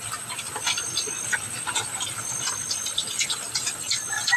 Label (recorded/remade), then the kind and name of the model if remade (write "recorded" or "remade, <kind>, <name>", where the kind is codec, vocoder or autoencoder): recorded